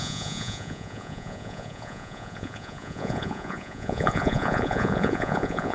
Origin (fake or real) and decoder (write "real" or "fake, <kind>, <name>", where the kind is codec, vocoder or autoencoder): fake, vocoder, Vocos